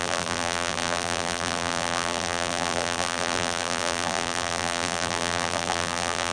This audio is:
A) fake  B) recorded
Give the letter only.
A